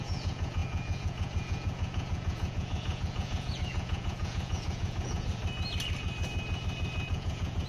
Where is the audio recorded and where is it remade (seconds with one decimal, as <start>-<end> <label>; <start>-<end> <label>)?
0.0-5.4 remade; 5.4-7.1 recorded; 7.1-7.7 remade